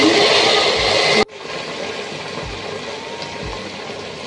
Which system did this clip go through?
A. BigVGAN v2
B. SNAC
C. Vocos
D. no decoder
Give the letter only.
D